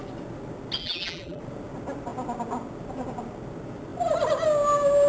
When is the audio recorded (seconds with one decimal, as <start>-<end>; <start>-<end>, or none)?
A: 0.0-0.8; 1.4-5.1